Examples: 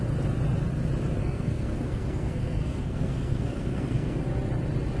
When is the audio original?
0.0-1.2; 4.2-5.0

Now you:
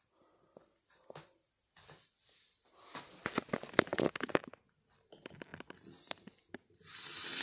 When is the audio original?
0.0-3.9; 4.4-7.4

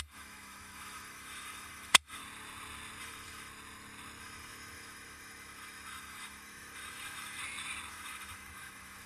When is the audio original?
2.2-3.0; 3.5-4.2; 7.4-7.9

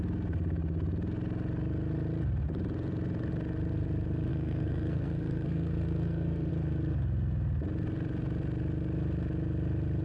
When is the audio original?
0.0-4.3; 6.5-10.0

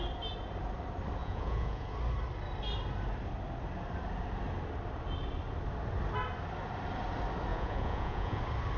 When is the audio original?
0.0-1.2; 1.9-7.5; 8.4-8.8